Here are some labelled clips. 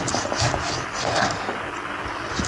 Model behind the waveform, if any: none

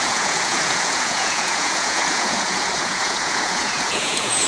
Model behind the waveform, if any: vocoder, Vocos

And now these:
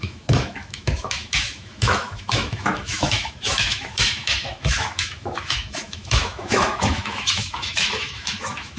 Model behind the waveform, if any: autoencoder, DAC-VAE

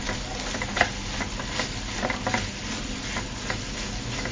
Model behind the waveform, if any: none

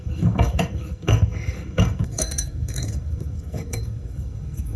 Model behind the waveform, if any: codec, SNAC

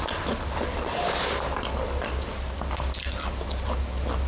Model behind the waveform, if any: none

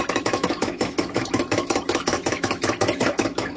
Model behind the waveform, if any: autoencoder, DAC-VAE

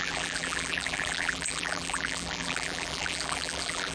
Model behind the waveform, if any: vocoder, BigVGAN v2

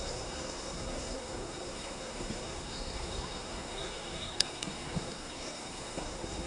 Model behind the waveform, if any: codec, SNAC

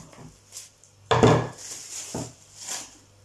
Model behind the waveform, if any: none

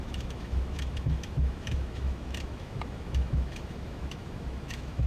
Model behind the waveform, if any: autoencoder, DAC-VAE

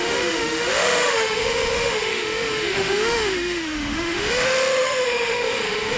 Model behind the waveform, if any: autoencoder, DAC-VAE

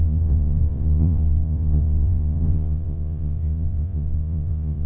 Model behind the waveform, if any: vocoder, Vocos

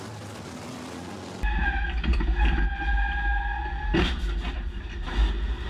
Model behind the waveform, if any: none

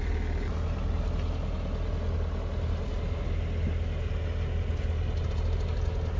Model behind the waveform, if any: none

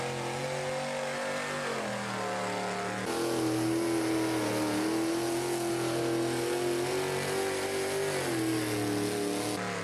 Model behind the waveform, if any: none